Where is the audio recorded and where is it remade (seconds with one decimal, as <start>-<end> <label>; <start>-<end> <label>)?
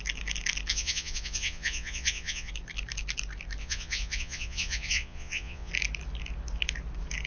0.0-0.7 recorded; 0.7-2.5 remade; 2.5-3.6 recorded; 3.6-5.7 remade; 5.7-7.3 recorded